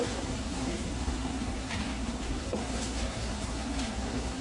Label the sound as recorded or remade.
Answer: remade